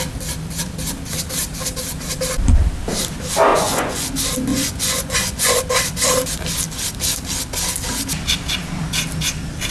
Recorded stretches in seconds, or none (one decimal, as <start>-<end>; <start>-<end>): 0.0-3.5; 4.1-4.5; 5.6-9.7